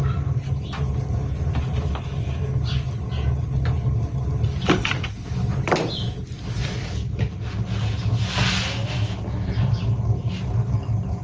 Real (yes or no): yes